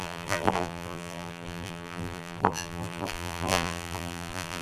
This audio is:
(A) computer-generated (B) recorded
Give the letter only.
A